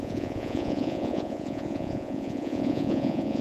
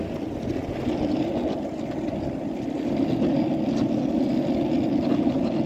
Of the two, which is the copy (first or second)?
first